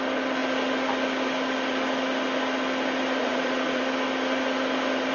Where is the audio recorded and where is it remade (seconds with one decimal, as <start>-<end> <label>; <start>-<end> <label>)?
0.0-3.2 recorded; 3.2-3.8 remade; 3.8-5.1 recorded